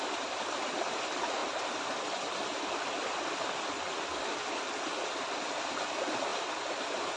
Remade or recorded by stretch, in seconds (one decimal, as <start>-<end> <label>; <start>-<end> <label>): 0.0-1.4 remade; 1.4-5.7 recorded; 5.7-7.2 remade